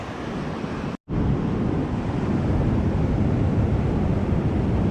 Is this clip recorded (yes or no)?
yes